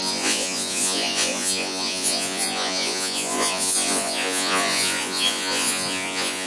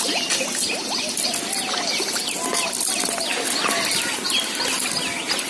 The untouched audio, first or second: second